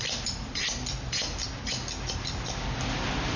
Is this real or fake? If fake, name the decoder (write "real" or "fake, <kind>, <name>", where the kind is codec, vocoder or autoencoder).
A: real